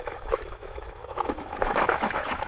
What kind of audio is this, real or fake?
fake